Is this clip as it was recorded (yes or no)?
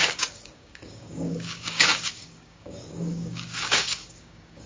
no